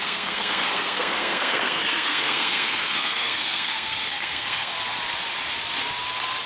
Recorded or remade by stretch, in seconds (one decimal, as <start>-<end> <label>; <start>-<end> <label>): 0.0-4.7 remade; 4.7-6.5 recorded